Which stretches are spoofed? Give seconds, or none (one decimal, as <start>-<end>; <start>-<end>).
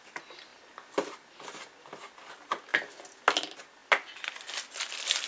none